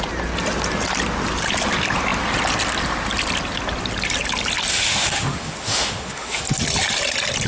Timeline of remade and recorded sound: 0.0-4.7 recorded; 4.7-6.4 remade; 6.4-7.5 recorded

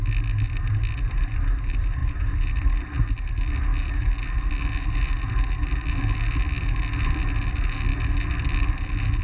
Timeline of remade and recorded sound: 0.0-2.0 recorded; 2.0-2.7 remade; 2.7-9.2 recorded

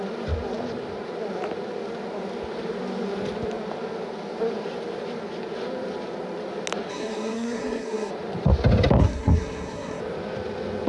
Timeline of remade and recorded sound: 0.0-6.9 recorded; 6.9-8.1 remade; 8.1-9.0 recorded; 9.0-10.0 remade; 10.0-10.9 recorded